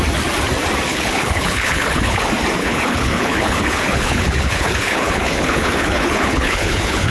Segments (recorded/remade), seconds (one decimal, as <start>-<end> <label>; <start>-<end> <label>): 0.0-0.9 recorded; 0.9-2.2 remade; 2.2-2.6 recorded; 2.6-7.1 remade